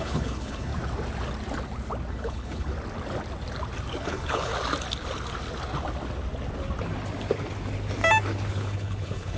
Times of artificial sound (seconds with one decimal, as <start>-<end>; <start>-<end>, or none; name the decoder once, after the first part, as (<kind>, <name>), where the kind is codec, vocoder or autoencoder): 0.0-0.7 (codec, HILCodec); 2.1-2.7; 4.0-4.5; 8.5-9.4